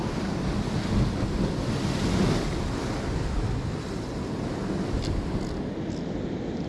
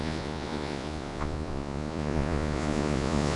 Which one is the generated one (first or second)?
second